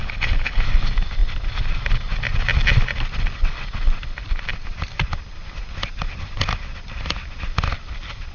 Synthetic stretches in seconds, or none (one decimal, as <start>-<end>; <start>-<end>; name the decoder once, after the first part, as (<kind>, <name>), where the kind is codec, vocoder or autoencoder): 0.0-0.6 (codec, HILCodec)